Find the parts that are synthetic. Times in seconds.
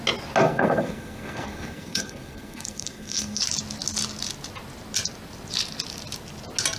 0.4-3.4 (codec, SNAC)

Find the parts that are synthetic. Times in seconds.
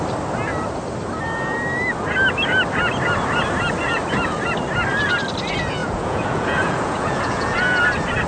5.8-7.8 (vocoder, Vocos)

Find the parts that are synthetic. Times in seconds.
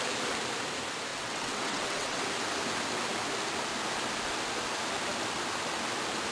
1.1-2.2 (vocoder, WaveNeXt)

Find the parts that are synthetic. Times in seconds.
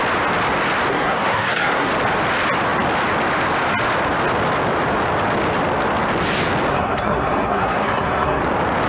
0.9-1.9 (codec, SNAC); 6.7-8.4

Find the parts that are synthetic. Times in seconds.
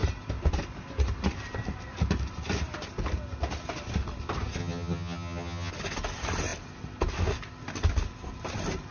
4.6-5.7 (vocoder, HiFi-GAN)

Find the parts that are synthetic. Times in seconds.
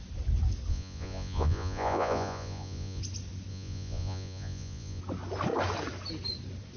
0.7-3.0 (vocoder, Vocos); 3.5-5.0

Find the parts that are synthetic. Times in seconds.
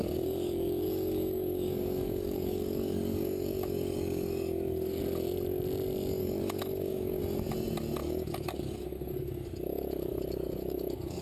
0.0-5.0 (codec, DAC); 6.2-7.2; 8.0-11.2